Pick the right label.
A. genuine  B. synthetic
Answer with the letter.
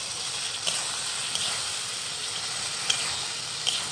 A